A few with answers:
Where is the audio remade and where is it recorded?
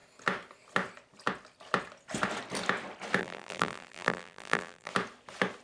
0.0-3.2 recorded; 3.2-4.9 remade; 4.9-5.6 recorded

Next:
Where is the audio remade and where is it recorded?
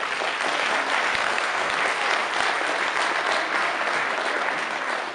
0.0-1.2 recorded; 1.2-1.7 remade; 1.7-5.1 recorded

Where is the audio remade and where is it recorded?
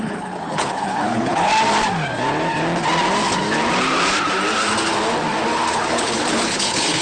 0.0-1.5 remade; 1.5-5.7 recorded; 5.7-7.0 remade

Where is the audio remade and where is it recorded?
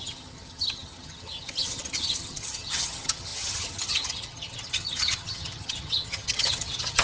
0.0-7.0 remade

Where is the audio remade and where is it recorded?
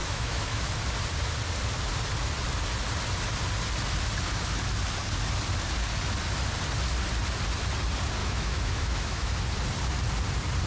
0.0-0.6 remade; 0.6-8.2 recorded; 8.2-9.3 remade; 9.3-10.7 recorded